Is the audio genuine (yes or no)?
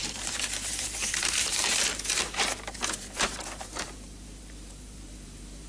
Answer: no